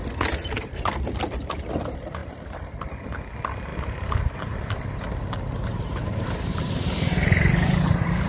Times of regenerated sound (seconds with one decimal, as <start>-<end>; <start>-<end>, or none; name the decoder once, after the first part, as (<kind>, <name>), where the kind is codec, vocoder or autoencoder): 2.2-2.8 (vocoder, BigVGAN v2); 3.7-4.2; 5.9-8.3